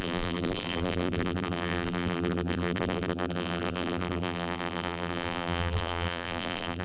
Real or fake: fake